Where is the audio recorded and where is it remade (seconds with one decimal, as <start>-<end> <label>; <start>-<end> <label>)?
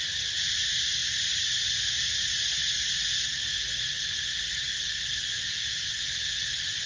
0.0-6.9 recorded